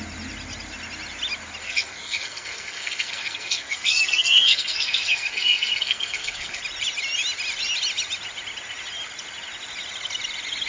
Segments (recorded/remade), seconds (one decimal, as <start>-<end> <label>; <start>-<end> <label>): 0.0-1.6 recorded; 1.6-6.6 remade; 6.6-10.7 recorded